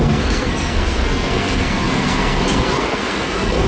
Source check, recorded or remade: remade